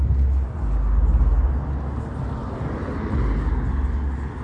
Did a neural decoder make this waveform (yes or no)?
no